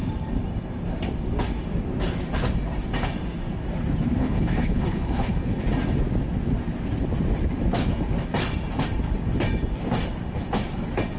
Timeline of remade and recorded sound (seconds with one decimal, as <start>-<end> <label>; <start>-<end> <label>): 0.0-4.2 recorded; 4.2-5.6 remade; 5.6-11.2 recorded